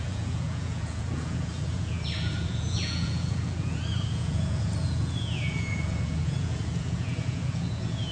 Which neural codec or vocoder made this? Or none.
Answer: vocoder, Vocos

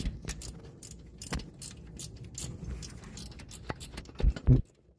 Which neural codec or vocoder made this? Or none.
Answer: none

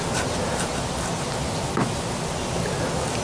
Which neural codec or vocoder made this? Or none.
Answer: none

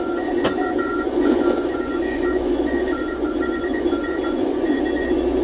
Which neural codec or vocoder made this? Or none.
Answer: vocoder, Vocos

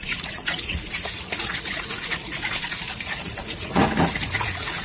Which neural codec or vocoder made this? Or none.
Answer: vocoder, Vocos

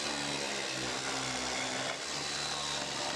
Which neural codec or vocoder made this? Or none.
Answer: none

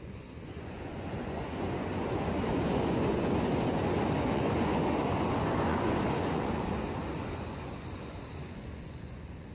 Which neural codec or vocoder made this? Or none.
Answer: vocoder, Vocos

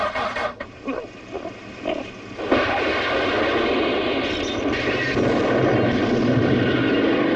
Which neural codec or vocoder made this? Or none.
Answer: none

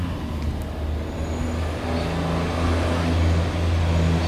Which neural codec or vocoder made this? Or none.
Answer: none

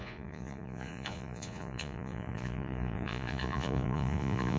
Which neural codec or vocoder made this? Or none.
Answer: vocoder, Vocos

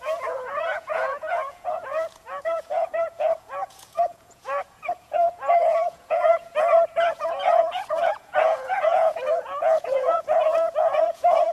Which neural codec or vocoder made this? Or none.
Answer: vocoder, Vocos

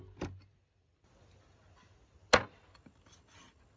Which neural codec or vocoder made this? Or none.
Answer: none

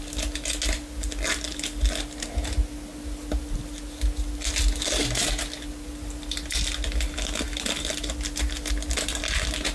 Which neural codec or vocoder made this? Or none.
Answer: none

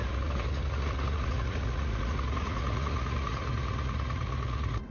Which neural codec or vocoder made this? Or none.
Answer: vocoder, Vocos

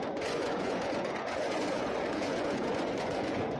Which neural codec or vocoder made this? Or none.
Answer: vocoder, Vocos